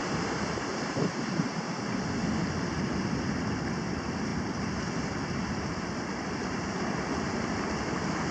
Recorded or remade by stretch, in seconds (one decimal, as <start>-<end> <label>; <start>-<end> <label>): 0.0-0.7 recorded; 0.7-1.7 remade; 1.7-8.3 recorded